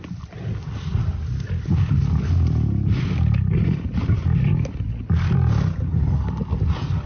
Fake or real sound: real